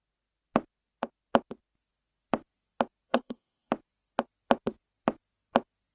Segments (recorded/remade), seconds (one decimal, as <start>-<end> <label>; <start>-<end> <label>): 0.0-3.1 recorded; 3.1-3.7 remade; 3.7-5.9 recorded